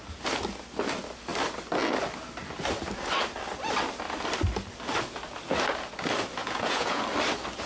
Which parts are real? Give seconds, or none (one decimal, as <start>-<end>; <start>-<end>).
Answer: 0.0-6.4; 7.0-7.7